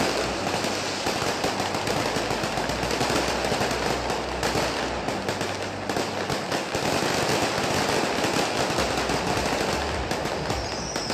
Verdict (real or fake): real